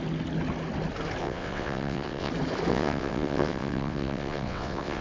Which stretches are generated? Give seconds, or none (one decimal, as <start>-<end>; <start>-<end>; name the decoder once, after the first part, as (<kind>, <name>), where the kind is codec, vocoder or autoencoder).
1.2-2.3 (vocoder, WaveNeXt); 2.7-5.0

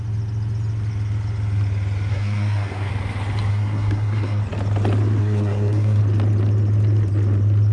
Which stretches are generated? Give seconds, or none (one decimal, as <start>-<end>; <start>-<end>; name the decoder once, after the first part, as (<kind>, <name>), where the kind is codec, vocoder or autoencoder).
2.1-2.9 (codec, SNAC); 3.5-4.4; 5.2-6.0